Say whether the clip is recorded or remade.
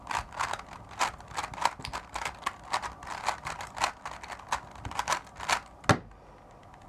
recorded